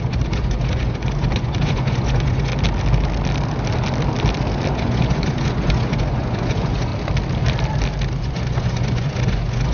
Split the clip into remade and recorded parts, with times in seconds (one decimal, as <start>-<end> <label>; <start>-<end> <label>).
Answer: 0.0-2.5 remade; 2.5-4.7 recorded; 4.7-6.9 remade; 6.9-8.2 recorded; 8.2-9.7 remade

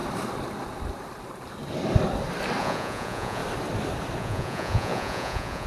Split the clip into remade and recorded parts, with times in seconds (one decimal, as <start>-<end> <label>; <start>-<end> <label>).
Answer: 0.0-2.6 recorded; 2.6-3.4 remade; 3.4-4.2 recorded; 4.2-5.7 remade

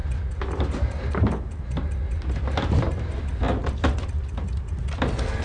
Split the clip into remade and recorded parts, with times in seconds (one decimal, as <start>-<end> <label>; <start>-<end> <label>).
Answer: 0.0-5.4 recorded

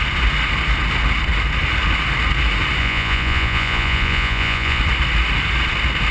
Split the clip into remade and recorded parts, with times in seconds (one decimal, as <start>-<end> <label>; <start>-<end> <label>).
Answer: 0.0-2.8 recorded; 2.8-4.8 remade; 4.8-6.1 recorded